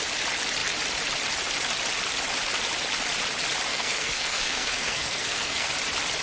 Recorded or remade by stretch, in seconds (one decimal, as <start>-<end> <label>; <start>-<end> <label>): 0.0-3.7 recorded; 3.7-5.7 remade; 5.7-6.2 recorded